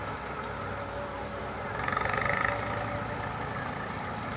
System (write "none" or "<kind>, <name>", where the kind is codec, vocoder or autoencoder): none